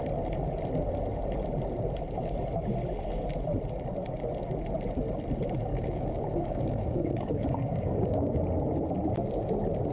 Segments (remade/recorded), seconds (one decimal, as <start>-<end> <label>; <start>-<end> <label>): 0.0-5.7 recorded; 5.7-8.4 remade; 8.4-9.9 recorded